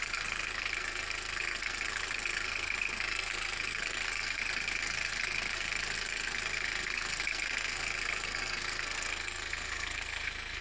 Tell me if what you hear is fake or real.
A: fake